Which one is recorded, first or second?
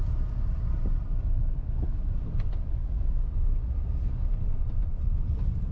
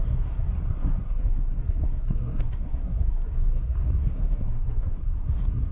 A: first